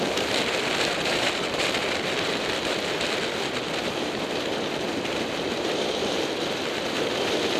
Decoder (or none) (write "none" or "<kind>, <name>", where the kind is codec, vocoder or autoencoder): vocoder, BigVGAN v2